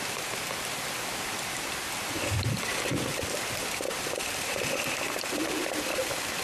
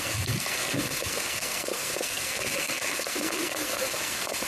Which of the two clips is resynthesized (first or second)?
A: second